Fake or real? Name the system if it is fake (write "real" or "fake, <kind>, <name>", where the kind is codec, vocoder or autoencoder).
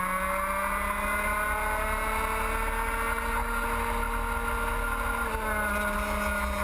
real